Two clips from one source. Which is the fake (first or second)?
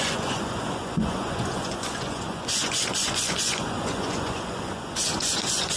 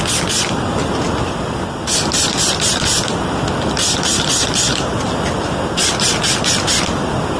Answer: first